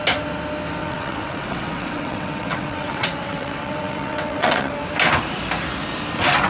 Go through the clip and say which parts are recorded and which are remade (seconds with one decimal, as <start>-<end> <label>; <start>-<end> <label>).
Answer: 0.0-0.8 recorded; 0.8-4.7 remade; 4.7-6.5 recorded